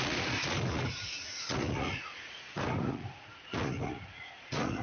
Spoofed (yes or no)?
yes